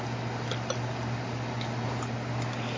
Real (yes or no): yes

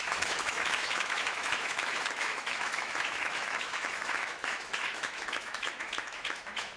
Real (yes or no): no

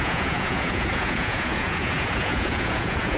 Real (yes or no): no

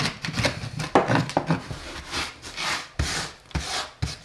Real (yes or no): yes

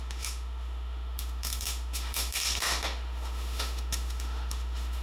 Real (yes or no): no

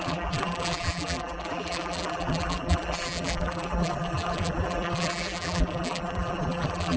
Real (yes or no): no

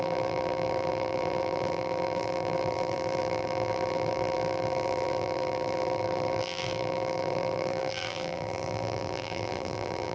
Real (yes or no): no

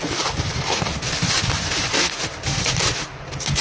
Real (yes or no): yes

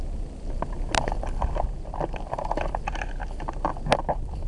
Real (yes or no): yes